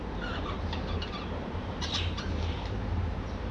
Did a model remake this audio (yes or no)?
yes